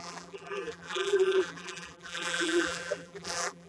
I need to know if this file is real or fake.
fake